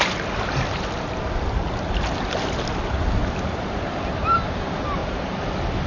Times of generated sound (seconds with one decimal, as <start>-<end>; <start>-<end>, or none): 5.0-5.5